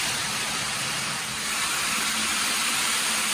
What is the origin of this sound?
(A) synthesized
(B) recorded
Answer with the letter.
A